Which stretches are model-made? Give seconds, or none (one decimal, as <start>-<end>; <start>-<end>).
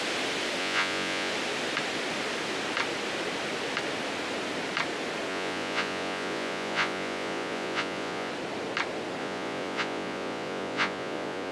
0.6-1.3; 5.3-8.3; 9.2-11.5